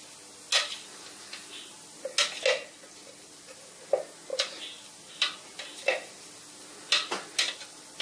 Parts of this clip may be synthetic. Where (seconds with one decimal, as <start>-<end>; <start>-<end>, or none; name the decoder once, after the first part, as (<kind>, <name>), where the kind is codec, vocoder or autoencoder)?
4.3-4.9 (vocoder, BigVGAN v2)